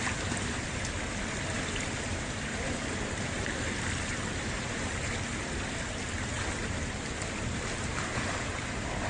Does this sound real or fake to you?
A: real